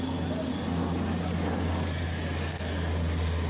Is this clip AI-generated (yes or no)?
no